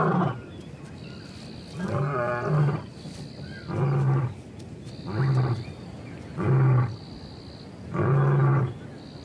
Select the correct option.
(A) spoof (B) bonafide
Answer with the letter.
B